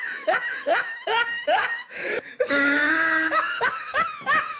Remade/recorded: remade